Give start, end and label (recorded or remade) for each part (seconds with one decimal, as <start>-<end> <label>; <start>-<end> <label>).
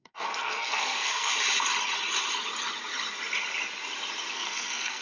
0.0-1.3 remade; 1.3-4.3 recorded; 4.3-5.0 remade